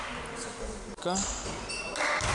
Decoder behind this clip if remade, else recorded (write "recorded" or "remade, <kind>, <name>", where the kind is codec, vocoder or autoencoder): recorded